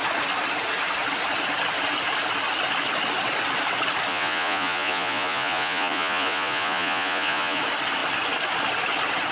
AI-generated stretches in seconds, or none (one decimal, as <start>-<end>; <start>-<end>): 4.1-7.6